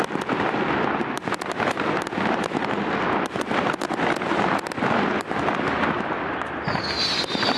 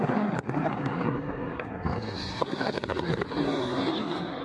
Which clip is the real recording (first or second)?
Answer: first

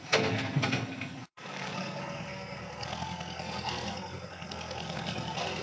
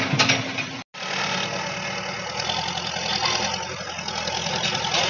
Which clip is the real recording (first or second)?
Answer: second